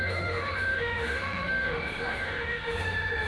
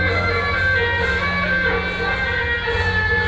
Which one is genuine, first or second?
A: second